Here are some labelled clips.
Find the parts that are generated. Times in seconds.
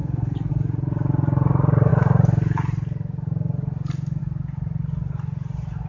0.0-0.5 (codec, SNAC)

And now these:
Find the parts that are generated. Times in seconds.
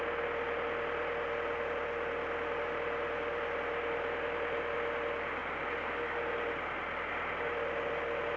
none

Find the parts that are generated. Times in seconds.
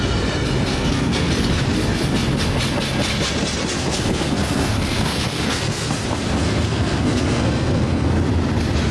0.7-1.3 (codec, SNAC); 3.8-5.9; 6.4-8.1